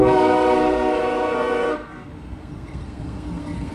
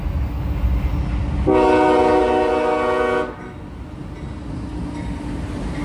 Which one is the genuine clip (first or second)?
second